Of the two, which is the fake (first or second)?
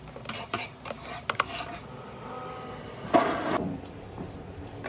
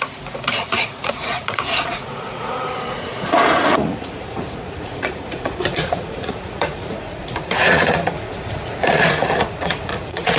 second